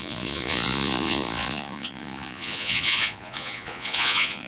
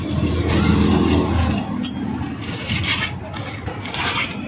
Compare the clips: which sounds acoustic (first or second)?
second